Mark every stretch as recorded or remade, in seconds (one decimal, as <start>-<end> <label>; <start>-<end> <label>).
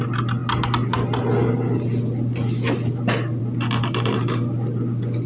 0.0-5.3 recorded